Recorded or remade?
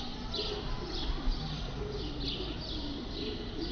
recorded